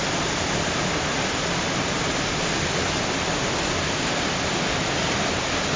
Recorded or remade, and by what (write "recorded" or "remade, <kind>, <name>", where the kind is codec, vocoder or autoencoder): recorded